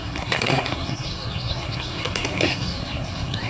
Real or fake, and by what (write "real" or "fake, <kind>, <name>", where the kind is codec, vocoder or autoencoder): fake, codec, SNAC